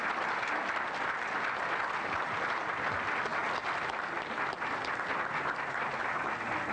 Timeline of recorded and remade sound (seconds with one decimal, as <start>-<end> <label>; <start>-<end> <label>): 0.0-6.7 recorded